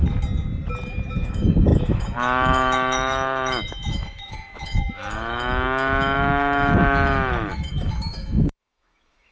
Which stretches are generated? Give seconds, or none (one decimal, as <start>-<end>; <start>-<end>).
0.9-9.3